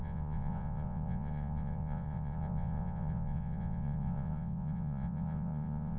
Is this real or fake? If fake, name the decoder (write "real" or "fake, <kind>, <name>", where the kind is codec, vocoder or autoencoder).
fake, vocoder, Vocos